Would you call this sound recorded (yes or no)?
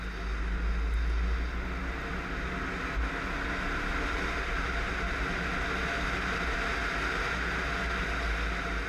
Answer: yes